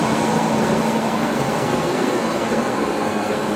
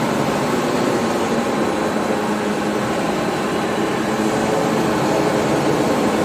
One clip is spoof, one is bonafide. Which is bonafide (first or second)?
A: second